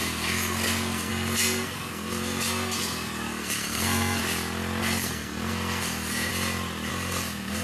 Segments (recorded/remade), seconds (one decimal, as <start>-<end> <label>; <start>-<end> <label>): 0.0-4.2 remade; 4.2-4.8 recorded; 4.8-6.3 remade; 6.3-6.9 recorded; 6.9-7.6 remade